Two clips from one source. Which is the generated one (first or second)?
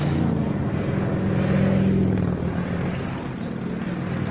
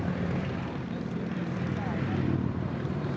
second